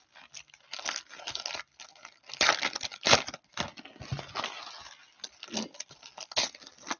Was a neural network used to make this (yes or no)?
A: no